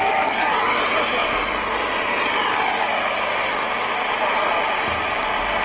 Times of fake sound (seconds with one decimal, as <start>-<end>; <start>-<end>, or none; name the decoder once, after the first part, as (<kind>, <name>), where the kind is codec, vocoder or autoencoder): none